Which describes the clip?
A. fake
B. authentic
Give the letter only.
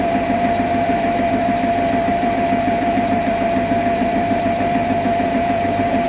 A